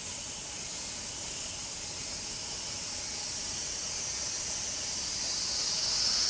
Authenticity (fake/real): real